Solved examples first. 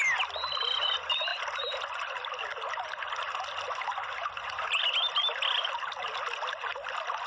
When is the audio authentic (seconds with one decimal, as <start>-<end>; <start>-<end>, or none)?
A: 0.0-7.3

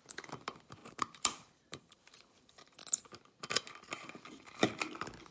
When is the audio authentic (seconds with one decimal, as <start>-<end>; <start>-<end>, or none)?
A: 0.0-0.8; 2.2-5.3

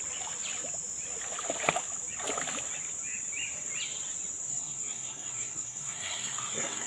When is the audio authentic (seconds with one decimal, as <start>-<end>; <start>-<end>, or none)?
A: 0.0-4.5

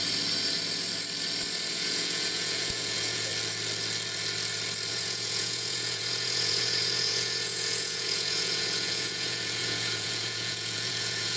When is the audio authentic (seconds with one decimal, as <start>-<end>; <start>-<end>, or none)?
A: 0.0-1.7; 3.3-4.9